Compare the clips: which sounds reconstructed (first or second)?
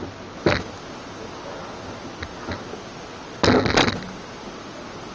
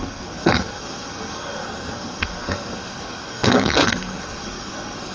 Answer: second